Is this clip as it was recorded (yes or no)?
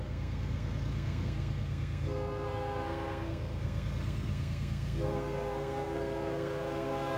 no